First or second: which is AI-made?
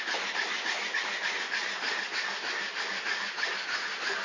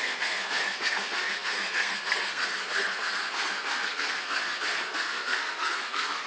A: second